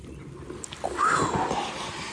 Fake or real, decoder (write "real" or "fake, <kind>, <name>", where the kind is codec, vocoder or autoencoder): real